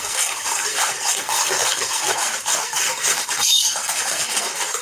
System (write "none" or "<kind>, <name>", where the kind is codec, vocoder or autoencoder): codec, SNAC